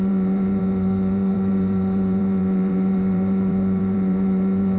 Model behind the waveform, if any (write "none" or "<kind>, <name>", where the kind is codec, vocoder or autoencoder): vocoder, BigVGAN v2